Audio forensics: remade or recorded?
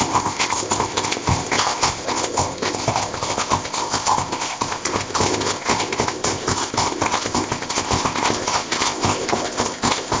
remade